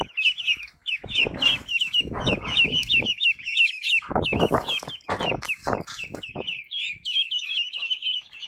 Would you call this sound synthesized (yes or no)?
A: yes